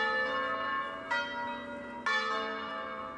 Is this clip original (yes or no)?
yes